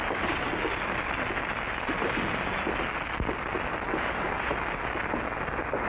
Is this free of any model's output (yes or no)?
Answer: yes